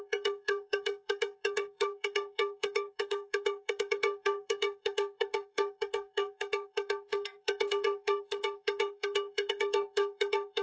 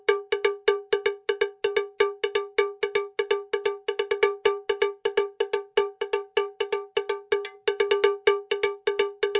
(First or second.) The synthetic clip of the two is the first